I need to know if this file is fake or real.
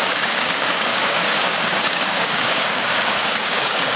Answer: fake